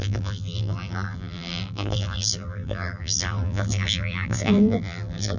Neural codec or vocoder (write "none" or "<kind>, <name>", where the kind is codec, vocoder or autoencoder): vocoder, BigVGAN v2